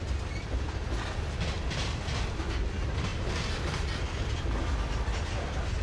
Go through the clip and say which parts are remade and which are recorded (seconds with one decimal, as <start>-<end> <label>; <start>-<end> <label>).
0.0-5.8 recorded